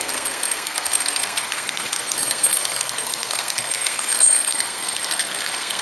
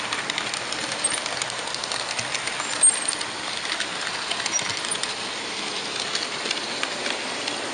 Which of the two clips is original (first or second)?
second